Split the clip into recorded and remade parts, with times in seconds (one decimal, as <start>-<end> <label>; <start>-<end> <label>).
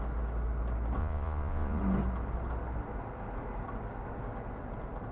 0.0-1.0 recorded; 1.0-1.8 remade; 1.8-5.1 recorded